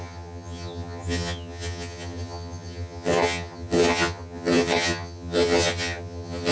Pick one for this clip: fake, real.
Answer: fake